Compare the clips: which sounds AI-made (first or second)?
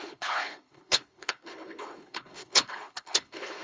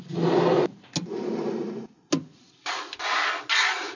first